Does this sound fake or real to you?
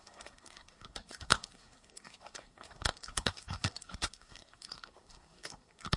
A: fake